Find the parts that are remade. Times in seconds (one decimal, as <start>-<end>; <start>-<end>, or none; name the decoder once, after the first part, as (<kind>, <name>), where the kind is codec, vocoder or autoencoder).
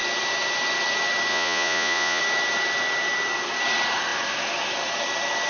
1.3-2.2 (vocoder, Vocos)